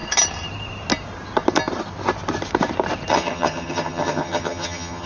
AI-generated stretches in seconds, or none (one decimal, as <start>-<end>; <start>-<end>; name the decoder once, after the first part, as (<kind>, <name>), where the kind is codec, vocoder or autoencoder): 3.1-5.1 (vocoder, HiFi-GAN)